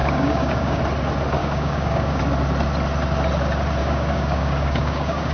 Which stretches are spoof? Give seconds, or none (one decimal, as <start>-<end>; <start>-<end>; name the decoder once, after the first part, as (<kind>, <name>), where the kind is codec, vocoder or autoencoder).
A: 0.0-0.8 (codec, DAC); 1.4-2.2; 3.8-5.3